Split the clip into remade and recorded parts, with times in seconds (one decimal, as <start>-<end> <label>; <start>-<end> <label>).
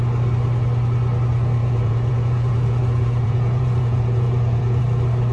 0.0-1.6 recorded; 1.6-4.8 remade; 4.8-5.3 recorded